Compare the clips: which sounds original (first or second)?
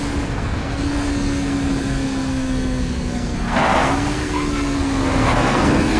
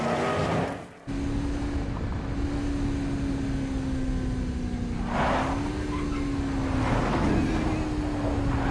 second